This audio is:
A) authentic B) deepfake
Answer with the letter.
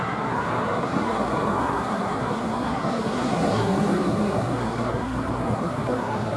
B